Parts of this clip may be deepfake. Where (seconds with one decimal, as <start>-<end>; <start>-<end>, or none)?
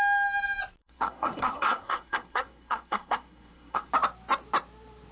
0.8-3.9